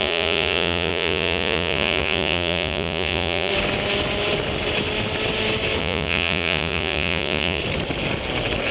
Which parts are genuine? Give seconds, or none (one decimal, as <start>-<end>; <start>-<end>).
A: 3.5-5.8; 7.6-8.7